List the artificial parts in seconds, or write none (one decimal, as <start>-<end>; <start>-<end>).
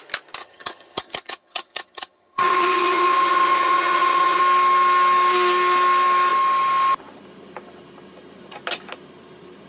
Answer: 0.4-4.4